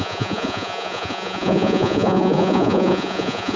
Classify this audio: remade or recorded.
remade